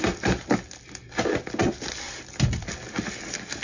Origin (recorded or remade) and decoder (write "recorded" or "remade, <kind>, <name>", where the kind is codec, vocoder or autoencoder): recorded